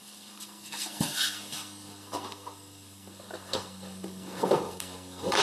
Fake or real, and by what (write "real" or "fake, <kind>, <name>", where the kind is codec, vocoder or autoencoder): fake, codec, SNAC